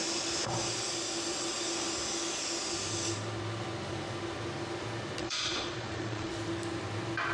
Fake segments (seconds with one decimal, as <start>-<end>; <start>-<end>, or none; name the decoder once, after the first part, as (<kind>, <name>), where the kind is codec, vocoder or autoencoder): 5.2-6.3 (vocoder, Vocos)